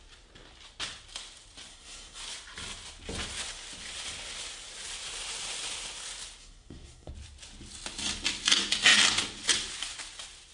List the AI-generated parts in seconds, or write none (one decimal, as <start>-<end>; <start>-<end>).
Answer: 1.7-2.2; 6.4-7.1